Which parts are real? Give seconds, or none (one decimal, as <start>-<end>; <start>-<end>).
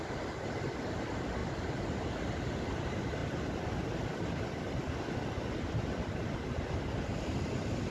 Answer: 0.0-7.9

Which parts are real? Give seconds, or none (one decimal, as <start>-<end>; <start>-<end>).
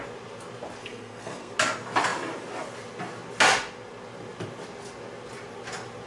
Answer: 0.0-0.8; 1.5-6.1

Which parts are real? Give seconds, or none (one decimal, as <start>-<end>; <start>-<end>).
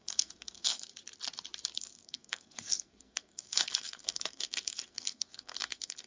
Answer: 0.9-1.8